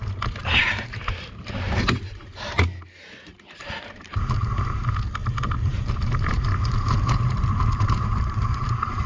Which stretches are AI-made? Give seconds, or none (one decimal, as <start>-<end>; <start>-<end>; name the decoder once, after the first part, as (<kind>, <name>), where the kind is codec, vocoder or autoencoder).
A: 0.4-1.8 (vocoder, BigVGAN v2); 3.3-4.5; 5.2-9.1